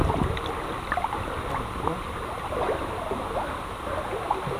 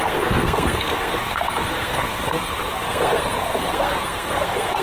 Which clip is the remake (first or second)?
second